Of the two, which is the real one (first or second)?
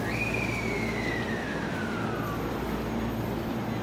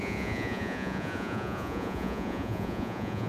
first